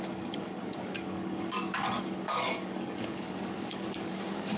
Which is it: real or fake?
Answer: fake